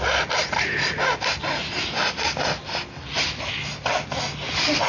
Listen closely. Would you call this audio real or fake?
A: fake